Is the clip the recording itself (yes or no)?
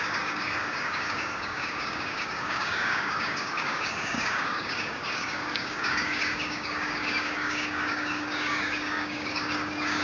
no